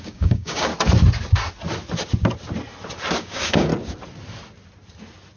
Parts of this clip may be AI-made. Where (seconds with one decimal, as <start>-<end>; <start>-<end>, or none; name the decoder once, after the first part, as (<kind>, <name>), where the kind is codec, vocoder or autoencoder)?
0.0-0.7 (codec, DAC); 3.2-3.7